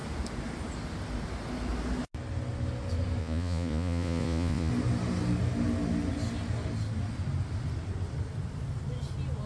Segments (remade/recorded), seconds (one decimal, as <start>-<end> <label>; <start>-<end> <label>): 0.0-3.2 recorded; 3.2-4.7 remade; 4.7-9.5 recorded